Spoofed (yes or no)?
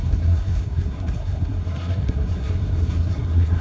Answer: yes